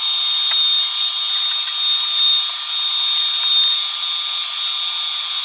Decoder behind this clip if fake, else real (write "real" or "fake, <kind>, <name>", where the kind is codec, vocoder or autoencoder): real